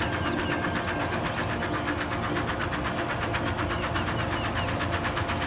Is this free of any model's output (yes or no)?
yes